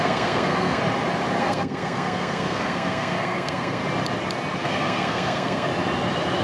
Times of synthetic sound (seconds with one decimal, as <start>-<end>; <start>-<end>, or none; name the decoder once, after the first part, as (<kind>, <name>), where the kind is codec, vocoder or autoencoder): 0.0-0.8 (codec, SNAC); 1.4-3.8; 4.6-5.7